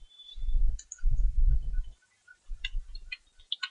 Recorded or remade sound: recorded